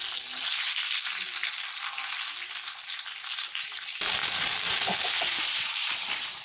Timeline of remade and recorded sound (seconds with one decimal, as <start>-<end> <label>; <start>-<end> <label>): 0.0-3.0 recorded; 3.0-4.2 remade; 4.2-5.4 recorded; 5.4-6.4 remade

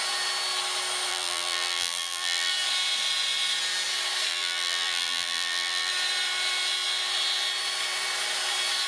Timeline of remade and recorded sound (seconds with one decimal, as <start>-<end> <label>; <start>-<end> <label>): 0.0-1.1 recorded; 1.1-2.5 remade; 2.5-4.3 recorded; 4.3-5.9 remade; 5.9-8.9 recorded